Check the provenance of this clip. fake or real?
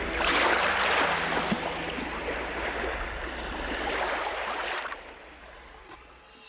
real